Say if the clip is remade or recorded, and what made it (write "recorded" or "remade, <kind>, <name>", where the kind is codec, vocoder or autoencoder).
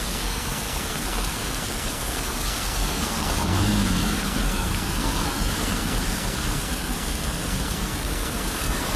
remade, codec, SNAC